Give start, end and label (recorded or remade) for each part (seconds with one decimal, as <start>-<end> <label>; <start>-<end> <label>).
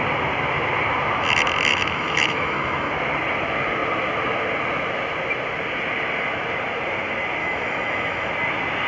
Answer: 0.0-1.7 recorded; 1.7-2.9 remade; 2.9-7.4 recorded; 7.4-8.3 remade; 8.3-8.9 recorded